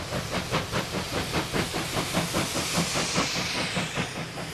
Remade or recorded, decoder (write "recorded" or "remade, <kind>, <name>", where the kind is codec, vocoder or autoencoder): recorded